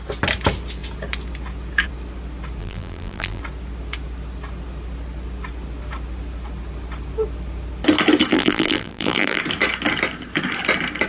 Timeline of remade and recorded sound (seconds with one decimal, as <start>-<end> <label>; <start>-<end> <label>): 0.0-2.6 recorded; 2.6-3.4 remade; 3.4-8.3 recorded; 8.3-9.4 remade; 9.4-11.1 recorded